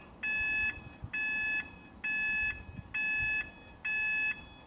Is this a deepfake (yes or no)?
no